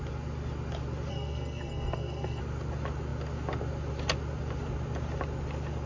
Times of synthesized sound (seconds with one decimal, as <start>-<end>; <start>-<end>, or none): 1.1-2.4